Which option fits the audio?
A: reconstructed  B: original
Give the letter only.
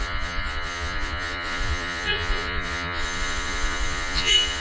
A